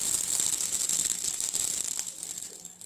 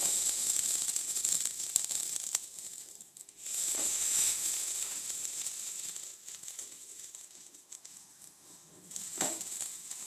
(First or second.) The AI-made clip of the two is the second